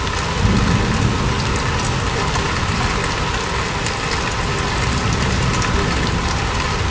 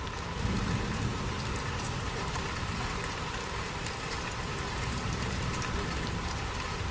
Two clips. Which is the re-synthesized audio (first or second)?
second